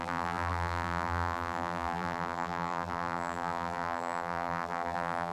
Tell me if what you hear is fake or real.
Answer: fake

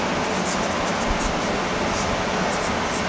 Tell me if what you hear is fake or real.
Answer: real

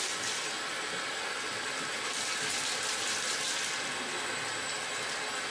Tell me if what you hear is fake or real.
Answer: real